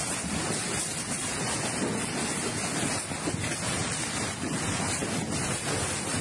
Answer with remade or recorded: recorded